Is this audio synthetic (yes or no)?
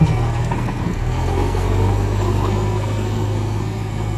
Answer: yes